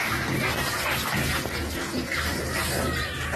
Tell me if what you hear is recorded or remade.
recorded